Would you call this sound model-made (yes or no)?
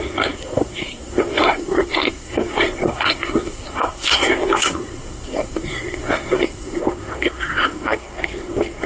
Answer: yes